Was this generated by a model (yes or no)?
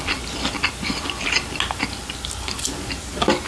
no